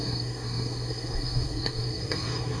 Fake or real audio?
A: fake